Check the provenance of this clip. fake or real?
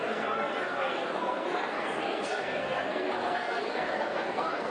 fake